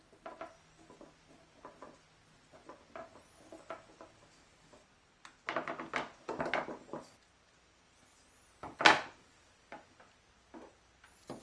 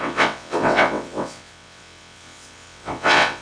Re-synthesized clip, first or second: second